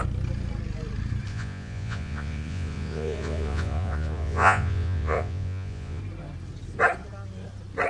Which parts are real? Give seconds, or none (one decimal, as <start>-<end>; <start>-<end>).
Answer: 0.0-1.3; 6.0-7.9